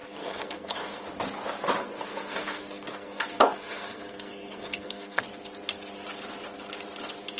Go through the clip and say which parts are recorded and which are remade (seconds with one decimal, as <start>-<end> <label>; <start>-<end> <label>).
0.0-1.0 remade; 1.0-1.8 recorded; 1.8-5.2 remade; 5.2-7.4 recorded